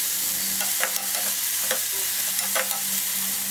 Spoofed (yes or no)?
no